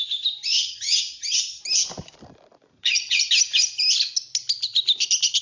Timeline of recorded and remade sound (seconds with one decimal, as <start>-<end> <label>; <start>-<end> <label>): 0.0-0.5 recorded; 0.5-1.6 remade; 1.6-2.7 recorded; 2.7-3.3 remade; 3.3-5.4 recorded